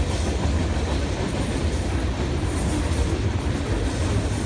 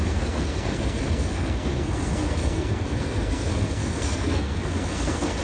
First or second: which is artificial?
second